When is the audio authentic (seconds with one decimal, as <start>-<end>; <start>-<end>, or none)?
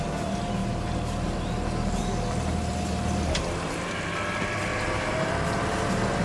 0.0-4.7; 5.3-6.2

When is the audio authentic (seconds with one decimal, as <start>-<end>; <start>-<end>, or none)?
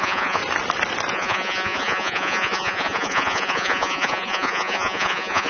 0.4-1.1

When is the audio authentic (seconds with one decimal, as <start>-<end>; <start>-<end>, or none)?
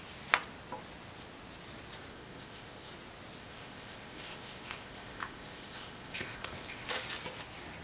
0.0-2.1; 2.9-3.4; 6.9-7.8